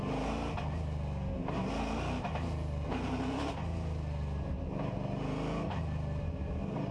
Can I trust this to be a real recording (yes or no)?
yes